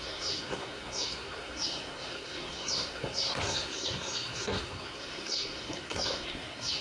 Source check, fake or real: fake